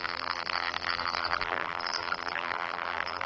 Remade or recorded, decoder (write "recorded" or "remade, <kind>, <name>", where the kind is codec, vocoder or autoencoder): remade, vocoder, BigVGAN v2